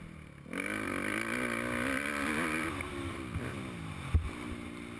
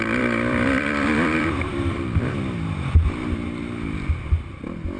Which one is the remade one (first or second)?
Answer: second